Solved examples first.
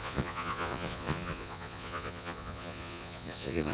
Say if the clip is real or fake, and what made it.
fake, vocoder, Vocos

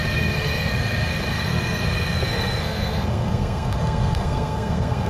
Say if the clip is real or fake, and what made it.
fake, codec, SNAC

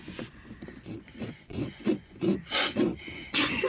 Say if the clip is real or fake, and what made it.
fake, vocoder, Vocos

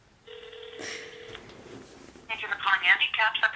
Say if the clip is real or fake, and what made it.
real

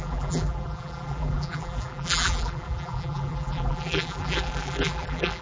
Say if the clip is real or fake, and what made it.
fake, vocoder, BigVGAN v2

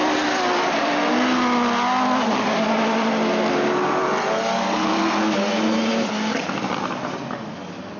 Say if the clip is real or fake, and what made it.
real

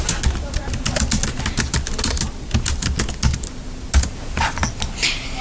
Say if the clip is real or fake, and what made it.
real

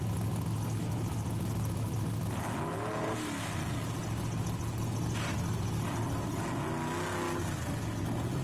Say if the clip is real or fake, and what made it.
real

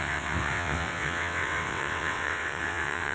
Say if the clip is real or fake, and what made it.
fake, vocoder, WaveNeXt